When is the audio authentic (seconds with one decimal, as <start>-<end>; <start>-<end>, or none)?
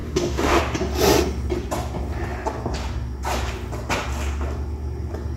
0.6-5.4